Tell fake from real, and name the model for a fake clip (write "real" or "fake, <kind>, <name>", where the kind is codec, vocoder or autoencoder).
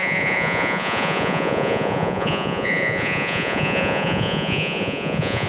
fake, vocoder, Vocos